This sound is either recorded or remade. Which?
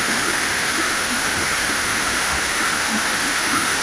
remade